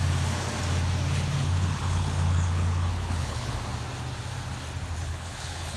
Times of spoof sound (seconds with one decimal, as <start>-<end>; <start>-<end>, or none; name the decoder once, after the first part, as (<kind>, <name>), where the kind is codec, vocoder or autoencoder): 1.4-3.5 (codec, HILCodec); 5.0-5.8